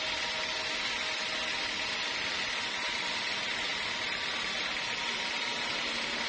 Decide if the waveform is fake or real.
real